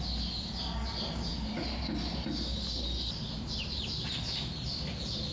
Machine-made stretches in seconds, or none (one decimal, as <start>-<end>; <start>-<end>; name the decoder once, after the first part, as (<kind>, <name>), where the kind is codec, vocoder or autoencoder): none